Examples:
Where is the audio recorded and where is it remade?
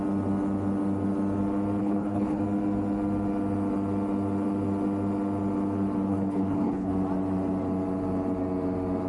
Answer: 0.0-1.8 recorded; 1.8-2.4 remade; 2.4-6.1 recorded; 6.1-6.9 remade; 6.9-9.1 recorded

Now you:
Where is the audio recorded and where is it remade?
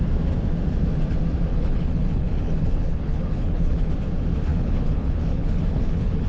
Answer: 0.0-1.5 recorded; 1.5-3.9 remade; 3.9-4.5 recorded; 4.5-6.3 remade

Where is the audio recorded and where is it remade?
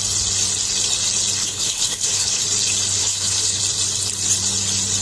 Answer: 0.0-1.4 recorded; 1.4-2.4 remade; 2.4-3.0 recorded; 3.0-3.6 remade; 3.6-5.0 recorded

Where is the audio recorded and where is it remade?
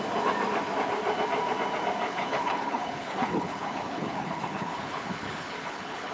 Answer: 0.0-2.1 recorded; 2.1-6.1 remade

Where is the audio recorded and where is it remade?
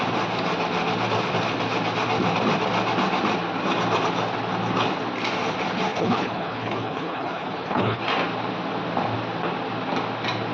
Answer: 0.0-5.9 recorded; 5.9-8.0 remade; 8.0-10.5 recorded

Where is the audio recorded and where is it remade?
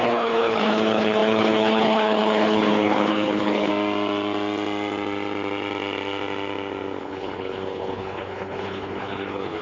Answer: 0.0-3.7 remade; 3.7-7.0 recorded; 7.0-9.6 remade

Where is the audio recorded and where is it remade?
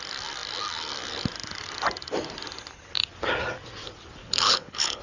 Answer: 0.0-4.2 recorded; 4.2-5.0 remade